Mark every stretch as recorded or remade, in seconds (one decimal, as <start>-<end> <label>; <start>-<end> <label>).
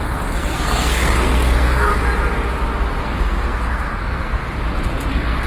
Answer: 0.0-1.9 remade; 1.9-3.0 recorded; 3.0-4.4 remade; 4.4-5.1 recorded; 5.1-5.5 remade